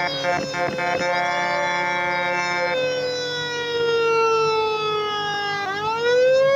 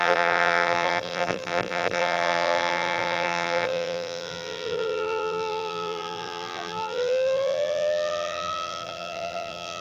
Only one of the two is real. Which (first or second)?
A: first